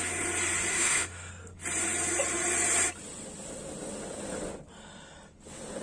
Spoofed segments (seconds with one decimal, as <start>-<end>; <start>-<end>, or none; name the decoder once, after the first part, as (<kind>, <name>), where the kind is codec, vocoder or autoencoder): 0.7-1.3 (autoencoder, DAC-VAE)